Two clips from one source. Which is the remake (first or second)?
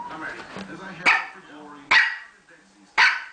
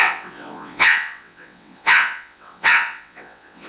second